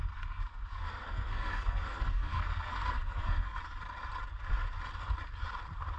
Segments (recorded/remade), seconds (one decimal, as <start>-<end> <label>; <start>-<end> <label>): 0.0-3.6 remade; 3.6-6.0 recorded